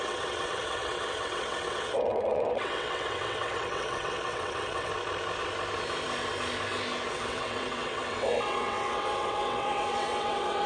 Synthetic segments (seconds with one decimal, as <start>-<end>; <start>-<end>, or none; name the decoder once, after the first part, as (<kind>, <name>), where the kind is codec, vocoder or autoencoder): 0.0-4.9 (vocoder, WaveNeXt); 7.1-10.7